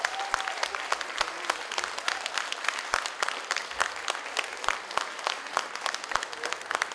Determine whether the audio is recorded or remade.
recorded